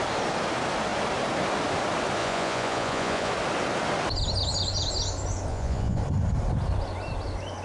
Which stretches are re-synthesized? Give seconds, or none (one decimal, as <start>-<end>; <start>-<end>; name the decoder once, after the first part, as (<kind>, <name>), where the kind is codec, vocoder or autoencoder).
2.2-3.3 (vocoder, Vocos); 5.5-6.0